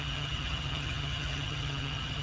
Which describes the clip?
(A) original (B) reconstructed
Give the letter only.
B